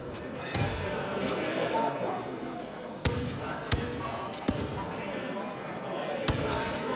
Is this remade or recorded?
remade